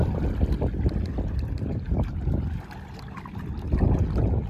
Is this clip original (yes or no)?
yes